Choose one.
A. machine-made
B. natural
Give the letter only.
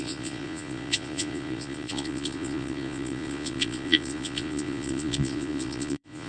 A